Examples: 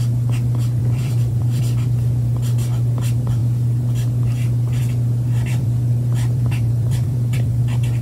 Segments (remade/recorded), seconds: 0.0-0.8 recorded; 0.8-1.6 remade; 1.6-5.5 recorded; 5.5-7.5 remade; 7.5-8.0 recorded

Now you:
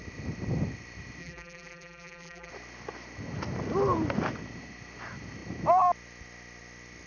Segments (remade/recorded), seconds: 0.0-1.2 recorded; 1.2-2.5 remade; 2.5-7.1 recorded

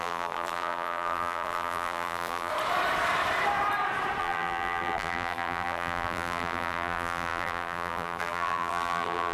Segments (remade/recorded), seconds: 0.0-2.5 remade; 2.5-4.2 recorded; 4.2-9.3 remade